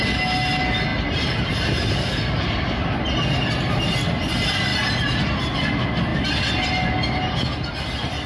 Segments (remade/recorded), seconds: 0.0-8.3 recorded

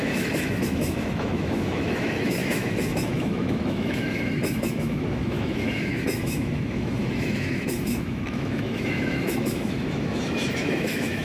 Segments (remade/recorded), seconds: 0.0-11.2 remade